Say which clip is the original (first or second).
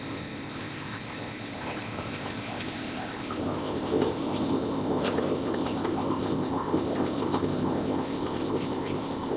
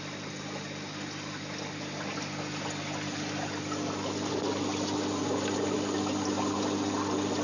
second